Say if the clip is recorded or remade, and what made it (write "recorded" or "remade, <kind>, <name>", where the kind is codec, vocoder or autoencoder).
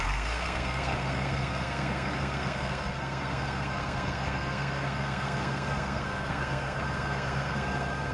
remade, codec, SNAC